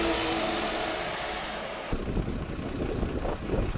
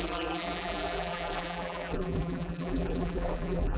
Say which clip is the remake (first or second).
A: second